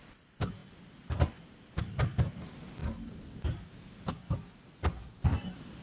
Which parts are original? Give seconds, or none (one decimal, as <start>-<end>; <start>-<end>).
0.0-5.8